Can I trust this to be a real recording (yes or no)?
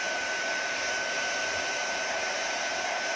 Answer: no